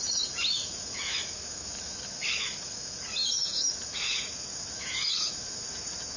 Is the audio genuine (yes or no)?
no